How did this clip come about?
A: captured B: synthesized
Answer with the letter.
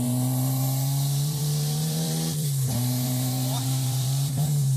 B